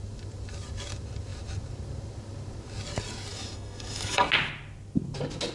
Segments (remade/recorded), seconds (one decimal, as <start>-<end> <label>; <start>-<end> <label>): 0.0-3.3 recorded; 3.3-4.2 remade; 4.2-5.5 recorded